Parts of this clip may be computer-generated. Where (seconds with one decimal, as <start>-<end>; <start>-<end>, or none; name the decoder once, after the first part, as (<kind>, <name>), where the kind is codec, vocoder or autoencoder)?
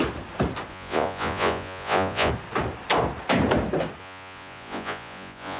0.7-2.3 (vocoder, Vocos); 4.0-5.6